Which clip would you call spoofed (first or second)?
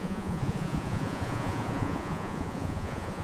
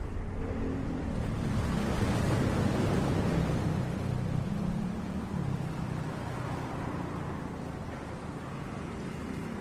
first